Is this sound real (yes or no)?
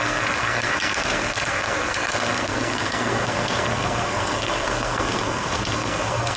no